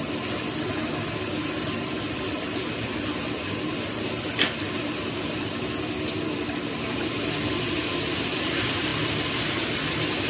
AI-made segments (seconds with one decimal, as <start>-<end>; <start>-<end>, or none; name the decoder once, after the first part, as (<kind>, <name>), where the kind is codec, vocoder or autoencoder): none